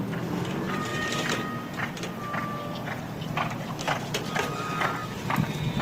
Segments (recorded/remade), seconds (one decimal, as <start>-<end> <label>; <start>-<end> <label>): 0.0-5.8 recorded